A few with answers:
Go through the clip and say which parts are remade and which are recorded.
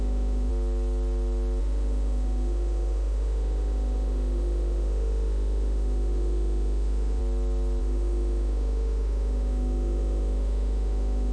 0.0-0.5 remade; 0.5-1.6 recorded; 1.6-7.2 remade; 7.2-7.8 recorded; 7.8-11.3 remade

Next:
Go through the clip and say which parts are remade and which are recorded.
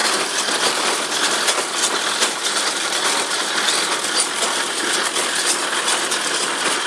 0.0-1.2 remade; 1.2-2.4 recorded; 2.4-3.3 remade; 3.3-6.9 recorded